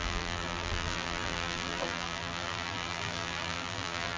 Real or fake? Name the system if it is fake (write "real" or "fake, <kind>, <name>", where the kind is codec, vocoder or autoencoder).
fake, vocoder, BigVGAN v2